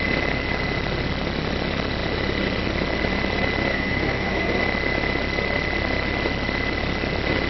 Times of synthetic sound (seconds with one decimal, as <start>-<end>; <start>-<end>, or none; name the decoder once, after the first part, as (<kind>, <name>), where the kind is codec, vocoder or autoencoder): 3.7-4.6 (codec, SNAC)